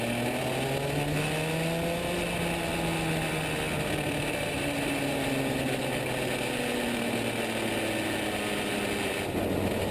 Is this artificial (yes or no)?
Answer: no